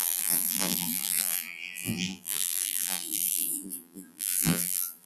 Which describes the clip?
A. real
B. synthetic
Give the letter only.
B